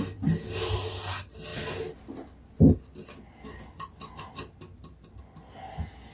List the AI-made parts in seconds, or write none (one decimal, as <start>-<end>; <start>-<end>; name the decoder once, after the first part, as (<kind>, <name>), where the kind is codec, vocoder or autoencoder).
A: none